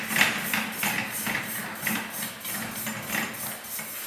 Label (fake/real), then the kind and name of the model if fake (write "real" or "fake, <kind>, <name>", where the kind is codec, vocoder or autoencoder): real